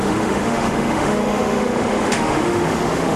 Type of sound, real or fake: fake